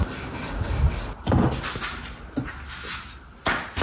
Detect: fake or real real